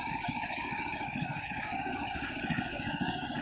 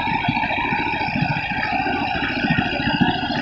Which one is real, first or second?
second